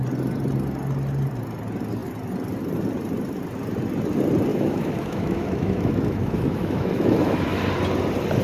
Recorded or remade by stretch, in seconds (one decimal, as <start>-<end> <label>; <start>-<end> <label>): 0.0-4.5 recorded; 4.5-7.6 remade; 7.6-8.4 recorded